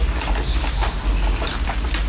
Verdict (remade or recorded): recorded